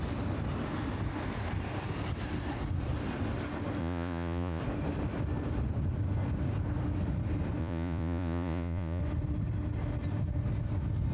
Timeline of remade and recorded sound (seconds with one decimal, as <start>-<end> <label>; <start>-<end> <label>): 0.0-3.8 recorded; 3.8-4.6 remade; 4.6-7.6 recorded; 7.6-9.0 remade; 9.0-11.1 recorded